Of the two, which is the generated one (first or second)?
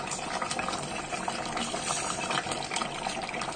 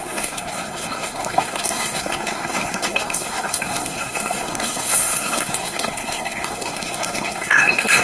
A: second